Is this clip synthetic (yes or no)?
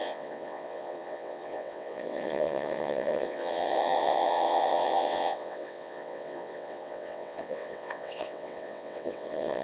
yes